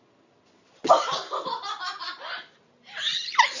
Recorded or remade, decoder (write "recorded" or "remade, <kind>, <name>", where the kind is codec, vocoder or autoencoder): recorded